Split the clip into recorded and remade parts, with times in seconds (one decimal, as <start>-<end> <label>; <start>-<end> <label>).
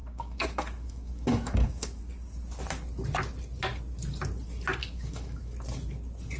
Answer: 0.0-2.0 remade; 2.0-4.8 recorded; 4.8-5.5 remade; 5.5-6.4 recorded